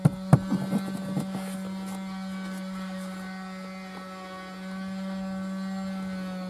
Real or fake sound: real